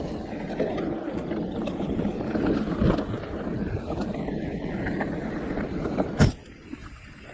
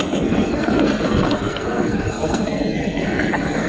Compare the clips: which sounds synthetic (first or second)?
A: second